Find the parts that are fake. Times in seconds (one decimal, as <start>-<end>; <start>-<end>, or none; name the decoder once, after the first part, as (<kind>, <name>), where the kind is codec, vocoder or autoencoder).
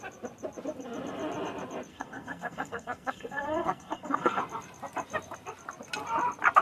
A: 1.9-4.4 (codec, SNAC)